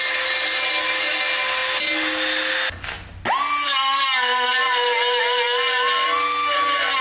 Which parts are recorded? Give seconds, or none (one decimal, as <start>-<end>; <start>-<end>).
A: 0.0-7.0